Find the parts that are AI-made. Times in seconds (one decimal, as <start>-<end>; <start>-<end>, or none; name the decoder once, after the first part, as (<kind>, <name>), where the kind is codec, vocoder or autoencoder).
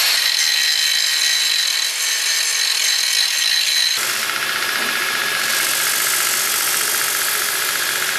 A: none